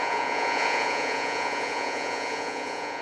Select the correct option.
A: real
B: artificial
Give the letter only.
B